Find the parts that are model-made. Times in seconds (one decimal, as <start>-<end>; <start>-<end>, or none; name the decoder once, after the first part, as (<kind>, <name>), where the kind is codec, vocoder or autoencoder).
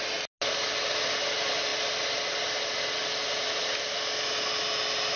none